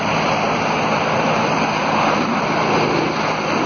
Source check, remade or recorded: recorded